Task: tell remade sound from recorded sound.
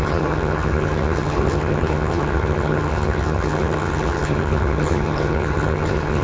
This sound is remade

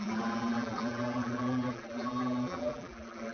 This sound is remade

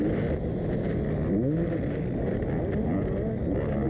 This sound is recorded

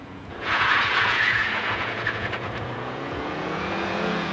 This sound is remade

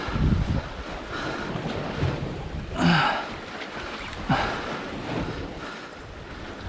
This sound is recorded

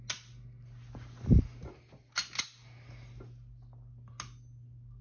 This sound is recorded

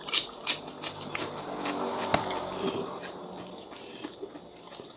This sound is recorded